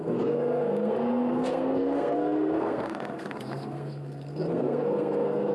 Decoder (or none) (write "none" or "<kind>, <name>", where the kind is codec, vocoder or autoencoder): codec, SNAC